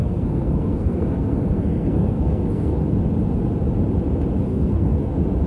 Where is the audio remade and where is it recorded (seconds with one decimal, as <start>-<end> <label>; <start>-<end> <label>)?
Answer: 0.0-2.8 remade; 2.8-4.5 recorded; 4.5-5.1 remade; 5.1-5.5 recorded

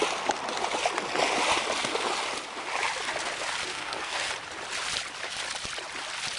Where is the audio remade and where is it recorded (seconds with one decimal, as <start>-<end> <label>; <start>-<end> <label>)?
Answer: 0.0-3.7 recorded; 3.7-4.3 remade; 4.3-6.4 recorded

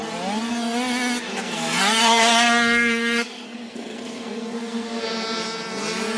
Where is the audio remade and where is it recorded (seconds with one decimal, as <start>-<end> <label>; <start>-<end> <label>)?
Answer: 0.0-1.3 recorded; 1.3-5.0 remade; 5.0-6.2 recorded